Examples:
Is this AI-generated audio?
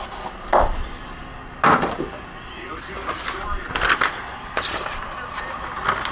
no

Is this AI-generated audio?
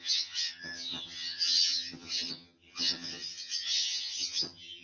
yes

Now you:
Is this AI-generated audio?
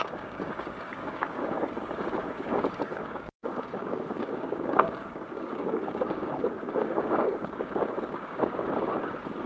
yes